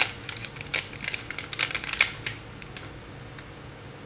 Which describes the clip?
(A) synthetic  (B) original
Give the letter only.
B